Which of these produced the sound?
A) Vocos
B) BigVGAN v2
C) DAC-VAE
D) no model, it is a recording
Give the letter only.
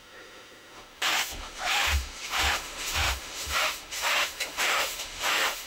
C